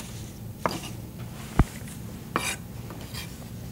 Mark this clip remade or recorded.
remade